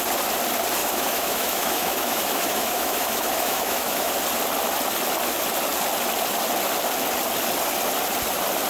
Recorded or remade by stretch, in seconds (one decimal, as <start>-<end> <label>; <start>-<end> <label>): 0.0-0.8 recorded; 0.8-4.1 remade; 4.1-8.7 recorded